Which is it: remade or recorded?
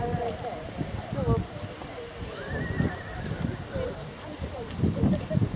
recorded